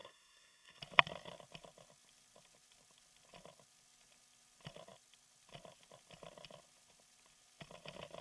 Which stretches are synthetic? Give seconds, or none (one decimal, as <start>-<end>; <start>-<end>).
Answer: 0.0-0.8